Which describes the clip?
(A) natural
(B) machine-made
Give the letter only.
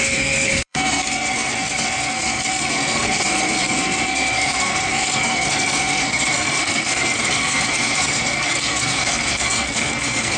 B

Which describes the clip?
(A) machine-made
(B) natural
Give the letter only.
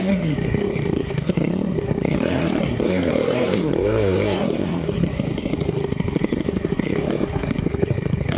A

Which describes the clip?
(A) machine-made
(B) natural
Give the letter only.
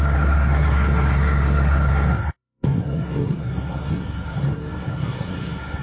A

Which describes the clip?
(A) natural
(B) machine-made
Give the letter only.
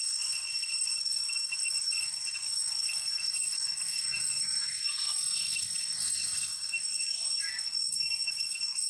B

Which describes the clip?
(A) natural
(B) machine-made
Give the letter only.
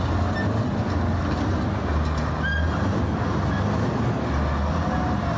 A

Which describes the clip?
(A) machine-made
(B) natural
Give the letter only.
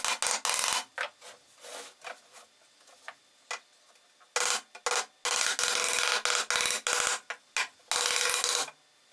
B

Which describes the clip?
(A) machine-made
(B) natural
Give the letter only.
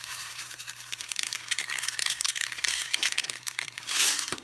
A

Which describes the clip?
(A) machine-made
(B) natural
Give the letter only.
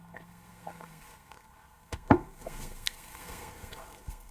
A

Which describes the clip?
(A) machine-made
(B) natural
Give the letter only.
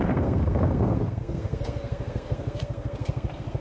A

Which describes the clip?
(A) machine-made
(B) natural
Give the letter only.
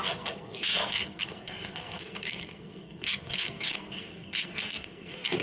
A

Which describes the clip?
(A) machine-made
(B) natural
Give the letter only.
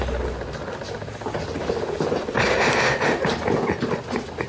B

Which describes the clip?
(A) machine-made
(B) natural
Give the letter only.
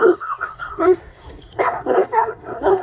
A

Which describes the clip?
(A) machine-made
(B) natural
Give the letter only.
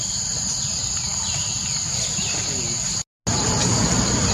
B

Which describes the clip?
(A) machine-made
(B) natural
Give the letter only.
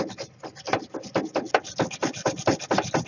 B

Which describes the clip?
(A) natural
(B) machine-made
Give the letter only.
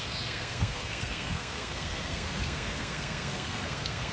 B